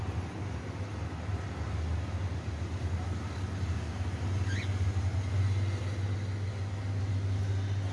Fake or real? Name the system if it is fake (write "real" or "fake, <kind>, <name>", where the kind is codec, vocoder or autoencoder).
real